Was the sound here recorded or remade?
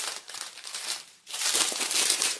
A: remade